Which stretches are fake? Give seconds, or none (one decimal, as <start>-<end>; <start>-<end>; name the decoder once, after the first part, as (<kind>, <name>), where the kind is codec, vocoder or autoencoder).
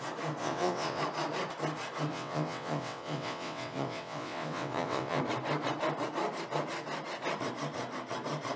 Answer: 0.4-1.0 (vocoder, WaveNeXt); 2.1-5.2